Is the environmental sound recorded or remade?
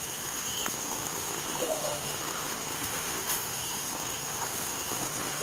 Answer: remade